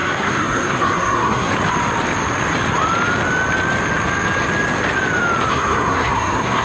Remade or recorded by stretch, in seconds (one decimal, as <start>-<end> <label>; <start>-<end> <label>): 0.0-1.5 remade; 1.5-5.5 recorded; 5.5-6.6 remade